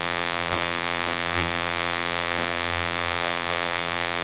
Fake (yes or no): yes